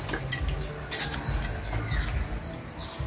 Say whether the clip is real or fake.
real